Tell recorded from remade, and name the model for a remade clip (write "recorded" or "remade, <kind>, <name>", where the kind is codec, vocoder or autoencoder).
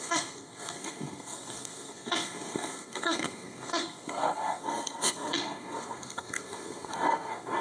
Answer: remade, codec, SNAC